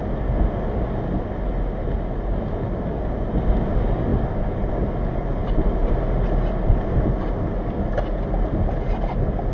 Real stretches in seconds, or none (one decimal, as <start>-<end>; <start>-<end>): 0.0-9.5